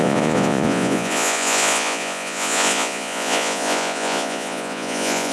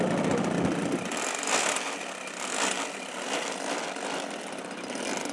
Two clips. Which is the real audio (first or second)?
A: second